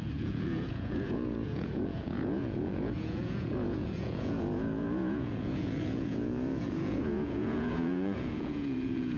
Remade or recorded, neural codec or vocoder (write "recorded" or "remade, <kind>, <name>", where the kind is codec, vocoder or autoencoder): remade, vocoder, Vocos